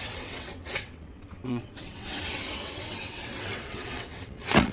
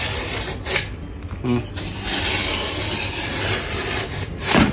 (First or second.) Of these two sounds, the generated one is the first